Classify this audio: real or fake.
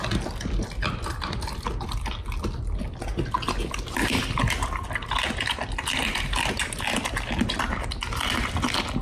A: real